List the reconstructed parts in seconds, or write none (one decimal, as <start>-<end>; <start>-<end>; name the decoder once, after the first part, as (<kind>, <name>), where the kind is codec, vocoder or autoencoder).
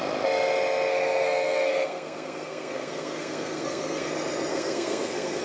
0.9-4.1 (codec, SNAC); 4.5-5.4